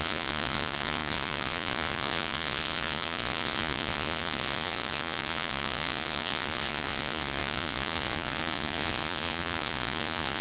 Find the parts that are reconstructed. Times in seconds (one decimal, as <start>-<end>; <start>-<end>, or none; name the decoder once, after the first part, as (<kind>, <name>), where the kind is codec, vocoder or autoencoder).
0.0-10.4 (vocoder, Vocos)